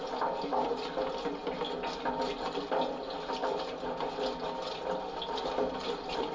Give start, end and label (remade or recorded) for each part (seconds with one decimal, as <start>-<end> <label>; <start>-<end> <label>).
0.0-6.3 recorded